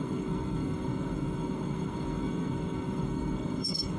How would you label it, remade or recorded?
remade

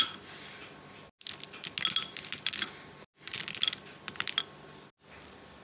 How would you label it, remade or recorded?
recorded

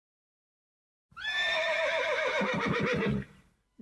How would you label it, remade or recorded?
remade